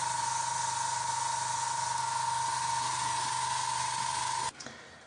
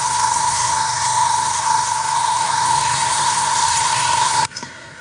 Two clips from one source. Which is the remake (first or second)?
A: second